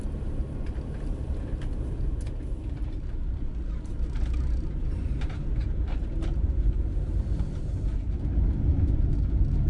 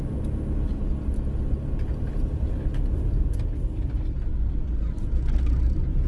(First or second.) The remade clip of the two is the first